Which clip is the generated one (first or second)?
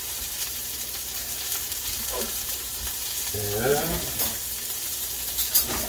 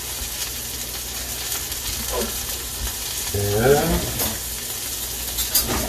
first